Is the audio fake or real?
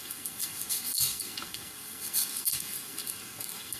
fake